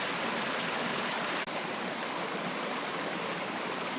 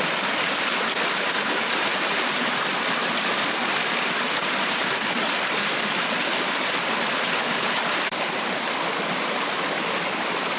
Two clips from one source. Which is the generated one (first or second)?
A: second